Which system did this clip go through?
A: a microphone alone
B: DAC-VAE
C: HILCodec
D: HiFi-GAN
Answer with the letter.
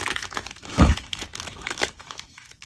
B